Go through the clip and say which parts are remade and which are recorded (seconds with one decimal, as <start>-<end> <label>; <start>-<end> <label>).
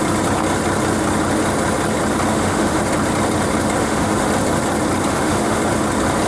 0.0-2.3 recorded; 2.3-2.8 remade; 2.8-3.8 recorded; 3.8-4.3 remade; 4.3-5.1 recorded; 5.1-5.6 remade; 5.6-6.3 recorded